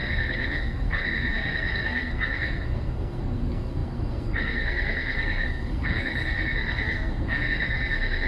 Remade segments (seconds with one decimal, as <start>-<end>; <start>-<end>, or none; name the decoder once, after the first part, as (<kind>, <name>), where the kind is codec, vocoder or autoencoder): 0.0-8.3 (codec, SNAC)